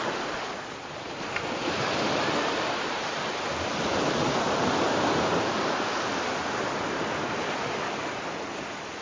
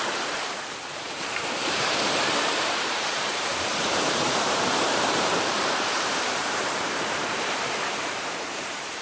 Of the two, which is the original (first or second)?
first